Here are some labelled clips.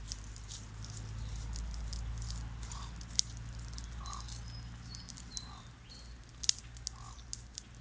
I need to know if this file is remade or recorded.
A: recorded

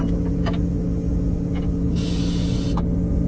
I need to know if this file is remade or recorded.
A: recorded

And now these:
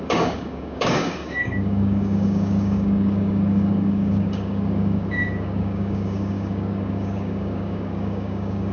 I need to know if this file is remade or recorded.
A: remade